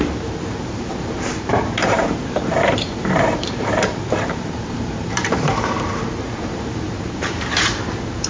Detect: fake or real fake